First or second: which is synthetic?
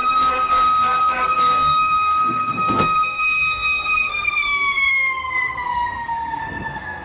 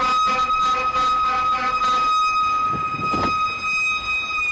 first